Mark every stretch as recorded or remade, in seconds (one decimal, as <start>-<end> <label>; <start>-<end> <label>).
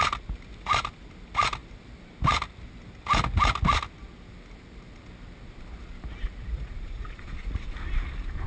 0.0-6.5 recorded; 6.5-7.7 remade; 7.7-8.5 recorded